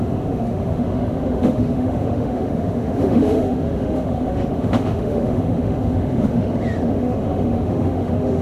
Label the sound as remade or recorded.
remade